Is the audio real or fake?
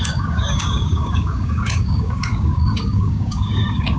fake